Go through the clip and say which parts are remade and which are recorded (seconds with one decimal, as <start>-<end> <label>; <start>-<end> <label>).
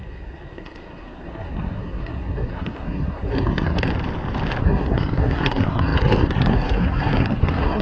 0.0-3.9 remade; 3.9-4.6 recorded; 4.6-7.8 remade